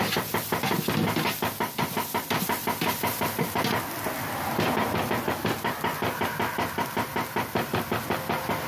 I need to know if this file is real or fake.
real